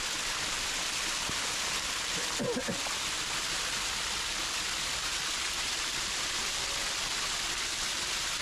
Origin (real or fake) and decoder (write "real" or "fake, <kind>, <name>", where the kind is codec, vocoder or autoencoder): real